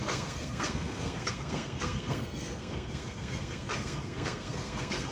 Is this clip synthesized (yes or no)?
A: yes